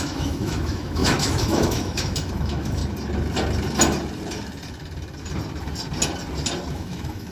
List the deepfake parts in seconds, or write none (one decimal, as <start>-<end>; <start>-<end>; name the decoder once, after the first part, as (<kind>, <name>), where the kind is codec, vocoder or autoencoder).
0.0-2.8 (autoencoder, DAC-VAE); 6.7-7.3